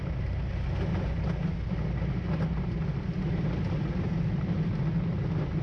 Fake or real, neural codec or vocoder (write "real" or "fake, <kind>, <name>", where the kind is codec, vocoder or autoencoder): real